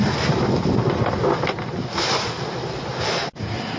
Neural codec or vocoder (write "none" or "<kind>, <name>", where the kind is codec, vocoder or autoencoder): none